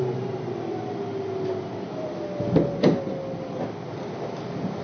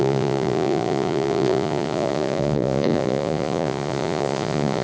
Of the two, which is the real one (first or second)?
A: first